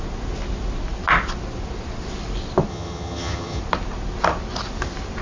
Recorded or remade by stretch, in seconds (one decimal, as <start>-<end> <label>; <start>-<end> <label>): 0.0-2.7 recorded; 2.7-3.6 remade; 3.6-5.2 recorded